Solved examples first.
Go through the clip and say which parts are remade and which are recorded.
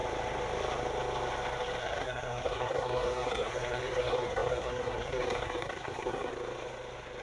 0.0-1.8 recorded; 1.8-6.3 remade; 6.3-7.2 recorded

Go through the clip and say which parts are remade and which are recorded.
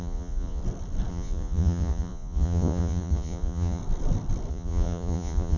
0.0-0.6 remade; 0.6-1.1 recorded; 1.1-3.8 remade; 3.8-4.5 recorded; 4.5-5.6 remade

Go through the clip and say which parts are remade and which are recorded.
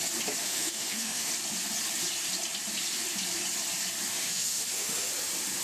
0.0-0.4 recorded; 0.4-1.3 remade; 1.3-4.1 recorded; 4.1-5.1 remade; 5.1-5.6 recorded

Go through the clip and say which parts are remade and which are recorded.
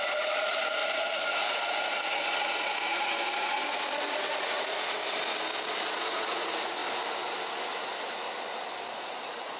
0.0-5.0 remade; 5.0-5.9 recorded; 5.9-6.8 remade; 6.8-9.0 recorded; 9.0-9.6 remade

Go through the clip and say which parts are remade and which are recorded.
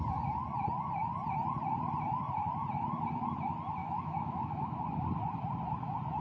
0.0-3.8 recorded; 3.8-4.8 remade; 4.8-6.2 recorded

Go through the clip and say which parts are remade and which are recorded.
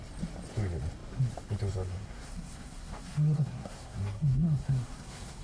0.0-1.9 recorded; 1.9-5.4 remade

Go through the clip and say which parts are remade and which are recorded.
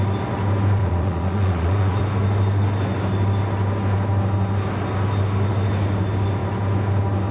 0.0-0.8 recorded; 0.8-2.0 remade; 2.0-7.3 recorded